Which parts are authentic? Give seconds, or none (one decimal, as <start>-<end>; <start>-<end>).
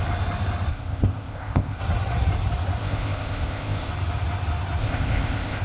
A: 0.0-0.7; 1.8-2.8; 3.9-4.8